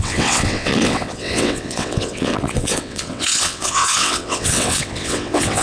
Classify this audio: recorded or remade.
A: remade